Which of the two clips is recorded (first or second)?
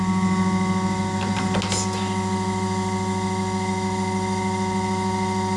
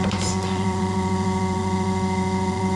first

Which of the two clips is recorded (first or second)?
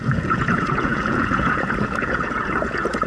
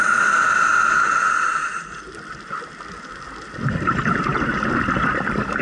second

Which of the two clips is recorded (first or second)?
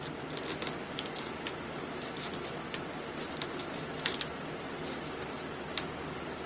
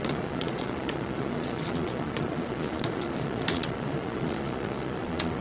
first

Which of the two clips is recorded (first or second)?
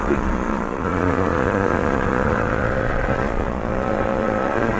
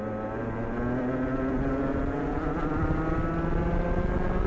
second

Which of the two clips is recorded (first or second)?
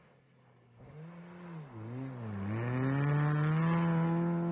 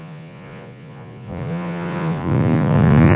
first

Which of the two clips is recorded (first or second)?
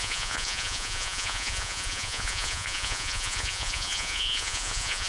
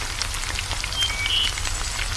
second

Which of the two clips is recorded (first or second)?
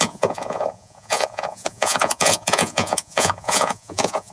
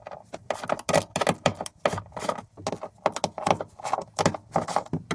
second